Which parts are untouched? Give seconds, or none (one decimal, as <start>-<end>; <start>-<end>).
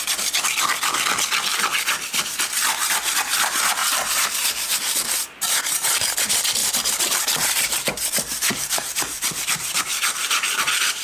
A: 0.0-3.8; 5.6-6.6; 10.6-11.0